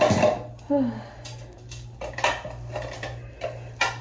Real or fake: real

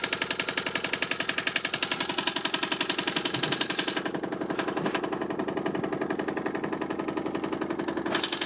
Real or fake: real